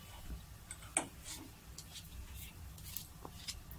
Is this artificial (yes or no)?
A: no